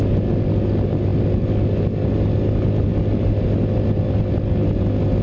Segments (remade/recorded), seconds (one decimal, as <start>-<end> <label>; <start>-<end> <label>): 0.0-5.2 recorded